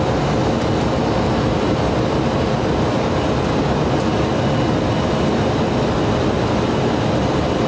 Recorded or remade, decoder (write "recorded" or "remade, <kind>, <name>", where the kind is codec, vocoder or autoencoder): recorded